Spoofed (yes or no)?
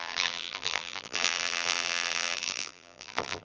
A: yes